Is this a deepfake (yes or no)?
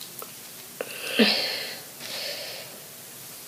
yes